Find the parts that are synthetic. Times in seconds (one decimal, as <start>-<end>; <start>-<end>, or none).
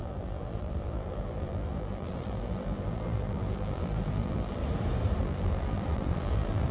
0.0-4.6; 5.2-6.7